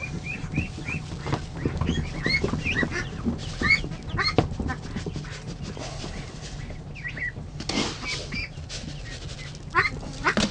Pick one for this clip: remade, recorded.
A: recorded